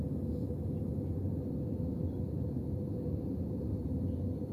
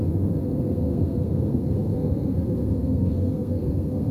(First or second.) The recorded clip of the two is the first